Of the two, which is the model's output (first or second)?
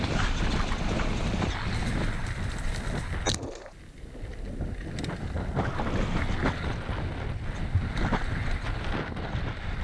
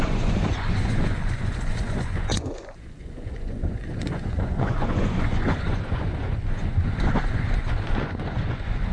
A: second